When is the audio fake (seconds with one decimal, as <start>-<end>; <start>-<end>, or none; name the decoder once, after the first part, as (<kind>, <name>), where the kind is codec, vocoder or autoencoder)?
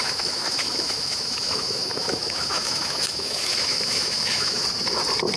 0.0-4.6 (autoencoder, DAC-VAE)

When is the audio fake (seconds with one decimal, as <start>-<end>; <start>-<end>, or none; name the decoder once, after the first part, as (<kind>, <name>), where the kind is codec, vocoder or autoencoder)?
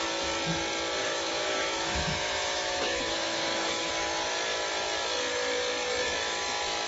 1.0-3.9 (autoencoder, DAC-VAE)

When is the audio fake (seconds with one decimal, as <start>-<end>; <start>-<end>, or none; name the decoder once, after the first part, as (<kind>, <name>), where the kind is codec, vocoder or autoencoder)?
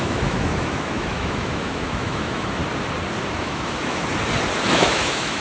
0.0-2.6 (autoencoder, DAC-VAE); 3.4-4.0; 4.7-5.4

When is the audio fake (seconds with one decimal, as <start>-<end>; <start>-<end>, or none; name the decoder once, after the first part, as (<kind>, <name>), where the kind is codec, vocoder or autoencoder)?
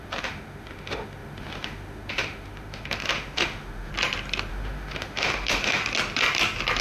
0.0-3.9 (autoencoder, DAC-VAE); 4.5-5.8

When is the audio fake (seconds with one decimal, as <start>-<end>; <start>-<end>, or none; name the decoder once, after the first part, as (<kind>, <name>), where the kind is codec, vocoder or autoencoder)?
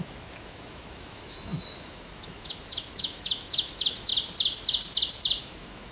0.0-4.1 (autoencoder, DAC-VAE); 5.4-5.9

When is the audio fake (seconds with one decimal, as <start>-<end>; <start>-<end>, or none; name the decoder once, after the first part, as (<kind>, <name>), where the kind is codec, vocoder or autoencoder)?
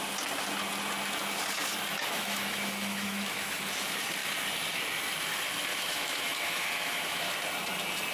2.1-3.6 (autoencoder, DAC-VAE); 5.7-7.3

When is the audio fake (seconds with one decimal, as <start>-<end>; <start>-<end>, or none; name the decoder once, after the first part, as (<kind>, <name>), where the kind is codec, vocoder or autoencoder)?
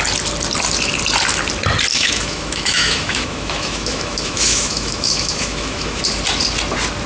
1.9-6.0 (autoencoder, DAC-VAE)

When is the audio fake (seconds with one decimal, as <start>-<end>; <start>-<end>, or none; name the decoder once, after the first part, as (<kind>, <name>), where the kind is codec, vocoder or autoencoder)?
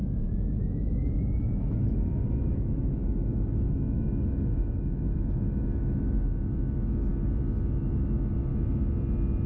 0.0-7.1 (autoencoder, DAC-VAE); 7.8-8.5